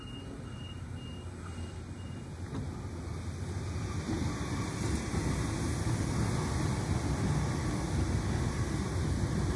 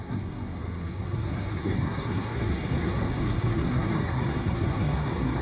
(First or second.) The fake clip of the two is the second